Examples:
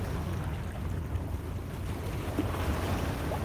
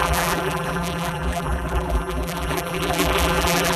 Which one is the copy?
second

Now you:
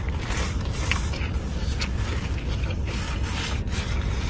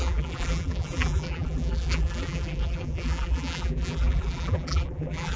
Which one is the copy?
second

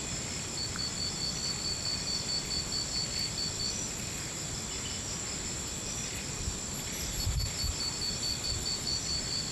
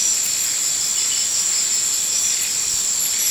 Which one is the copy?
second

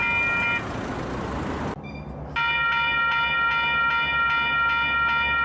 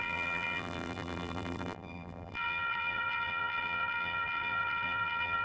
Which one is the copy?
second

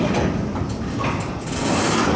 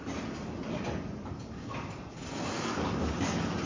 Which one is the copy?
second